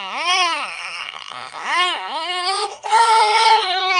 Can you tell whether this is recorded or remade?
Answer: remade